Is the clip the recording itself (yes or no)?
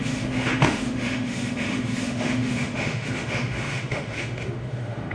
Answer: no